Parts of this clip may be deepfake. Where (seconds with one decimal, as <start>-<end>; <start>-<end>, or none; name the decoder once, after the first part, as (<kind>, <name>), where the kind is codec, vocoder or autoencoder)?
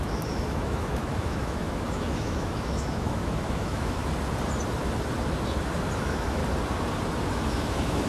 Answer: 0.0-4.0 (autoencoder, DAC-VAE); 5.9-6.4; 7.3-8.1